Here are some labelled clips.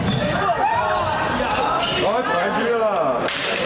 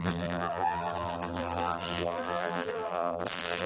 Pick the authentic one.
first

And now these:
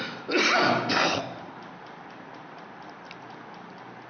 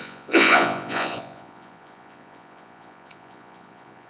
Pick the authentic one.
first